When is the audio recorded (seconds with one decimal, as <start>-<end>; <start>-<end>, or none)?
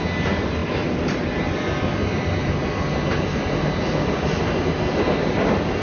0.0-0.6; 3.0-5.8